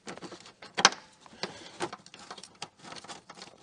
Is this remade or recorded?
recorded